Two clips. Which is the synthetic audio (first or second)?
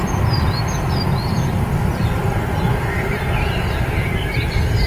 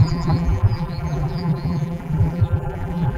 second